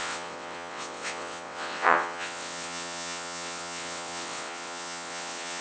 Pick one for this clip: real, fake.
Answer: fake